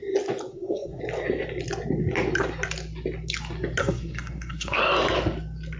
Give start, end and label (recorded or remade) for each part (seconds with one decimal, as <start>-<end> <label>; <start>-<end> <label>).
0.0-0.5 recorded; 0.5-1.0 remade; 1.0-3.8 recorded; 3.8-4.8 remade; 4.8-5.8 recorded